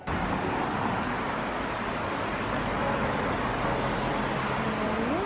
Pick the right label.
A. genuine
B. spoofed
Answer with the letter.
A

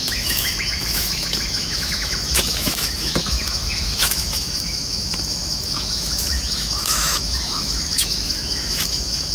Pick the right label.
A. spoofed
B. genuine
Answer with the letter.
A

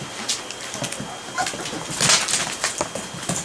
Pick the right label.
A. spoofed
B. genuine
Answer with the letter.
B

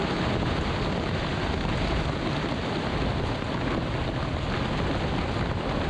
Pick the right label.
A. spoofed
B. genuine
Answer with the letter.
B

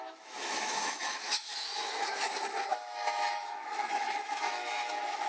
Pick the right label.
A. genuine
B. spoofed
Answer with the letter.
B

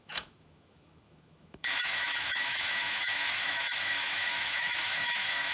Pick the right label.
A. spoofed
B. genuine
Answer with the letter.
A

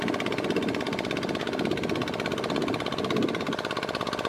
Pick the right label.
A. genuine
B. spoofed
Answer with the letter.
A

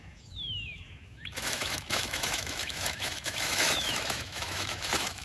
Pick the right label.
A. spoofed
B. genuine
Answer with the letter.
A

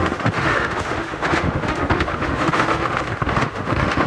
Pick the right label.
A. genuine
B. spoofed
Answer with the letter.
B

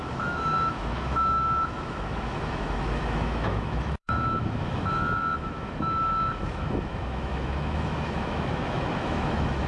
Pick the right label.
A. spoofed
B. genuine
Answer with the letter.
A